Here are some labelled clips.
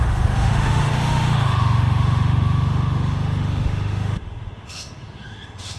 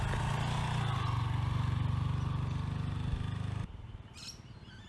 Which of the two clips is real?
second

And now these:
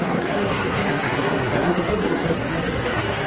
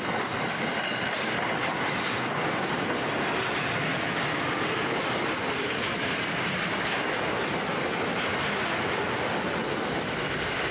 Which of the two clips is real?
second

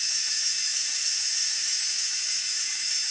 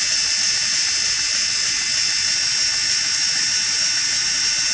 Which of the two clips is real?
second